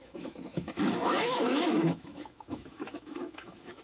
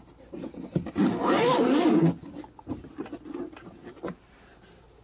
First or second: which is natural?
second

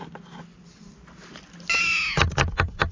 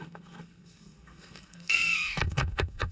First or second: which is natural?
first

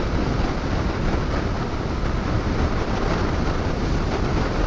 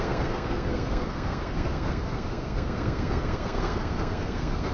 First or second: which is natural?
first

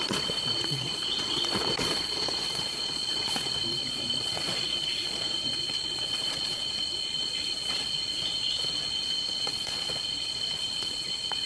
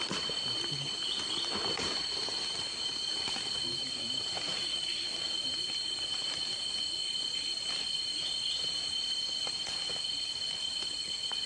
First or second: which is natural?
second